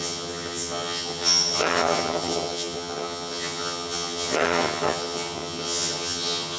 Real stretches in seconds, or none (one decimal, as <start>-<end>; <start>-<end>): none

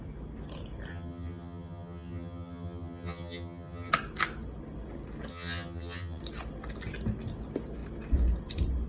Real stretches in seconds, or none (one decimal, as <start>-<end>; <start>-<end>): 0.0-0.9; 3.9-5.3; 6.2-8.9

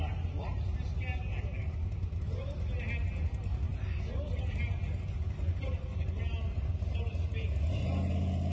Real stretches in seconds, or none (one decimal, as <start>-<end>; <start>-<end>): 0.0-8.5

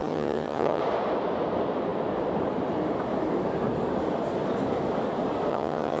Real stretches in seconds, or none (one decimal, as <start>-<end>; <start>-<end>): 0.8-5.5

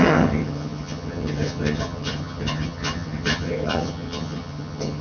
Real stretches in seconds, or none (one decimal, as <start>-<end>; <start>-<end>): none

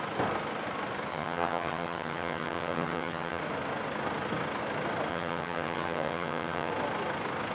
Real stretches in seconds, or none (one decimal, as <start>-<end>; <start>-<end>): 0.0-1.1; 3.4-5.1; 6.7-7.5

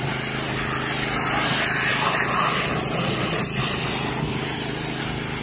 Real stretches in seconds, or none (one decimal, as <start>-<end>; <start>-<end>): 0.0-5.4